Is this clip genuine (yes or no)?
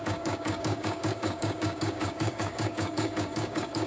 no